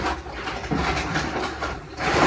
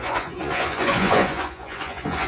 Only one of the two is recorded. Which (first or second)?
first